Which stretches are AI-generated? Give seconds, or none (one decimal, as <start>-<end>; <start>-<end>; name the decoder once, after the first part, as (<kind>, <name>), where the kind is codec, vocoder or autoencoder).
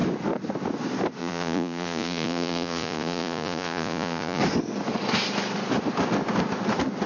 1.2-4.4 (vocoder, Vocos)